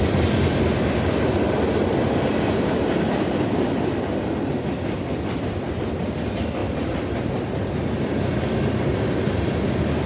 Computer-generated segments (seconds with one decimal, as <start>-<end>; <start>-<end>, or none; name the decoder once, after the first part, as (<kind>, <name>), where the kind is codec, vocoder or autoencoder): none